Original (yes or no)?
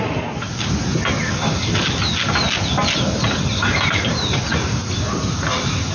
yes